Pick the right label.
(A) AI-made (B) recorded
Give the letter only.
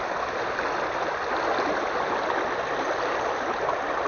B